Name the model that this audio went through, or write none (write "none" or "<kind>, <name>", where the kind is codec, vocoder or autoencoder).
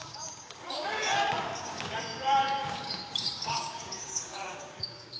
codec, DAC